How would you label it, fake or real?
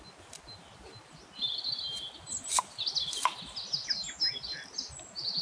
real